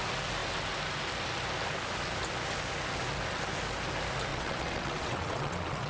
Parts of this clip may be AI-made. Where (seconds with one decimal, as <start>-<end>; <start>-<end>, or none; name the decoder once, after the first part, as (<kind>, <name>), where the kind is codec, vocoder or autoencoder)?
4.3-5.9 (vocoder, WaveNeXt)